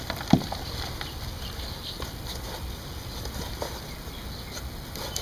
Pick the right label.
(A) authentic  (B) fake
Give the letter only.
B